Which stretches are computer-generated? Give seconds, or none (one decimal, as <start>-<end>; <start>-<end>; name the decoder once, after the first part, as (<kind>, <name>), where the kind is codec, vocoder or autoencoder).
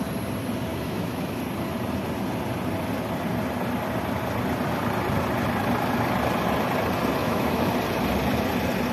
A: 0.7-1.4 (autoencoder, DAC-VAE); 7.2-7.7